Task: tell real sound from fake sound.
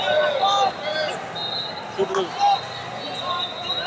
real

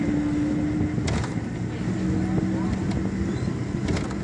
real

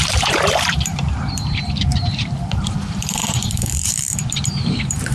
fake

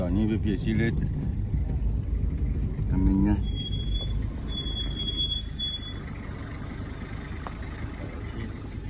real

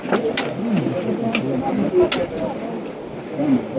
real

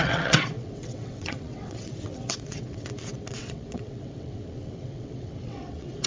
fake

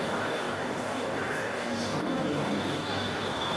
fake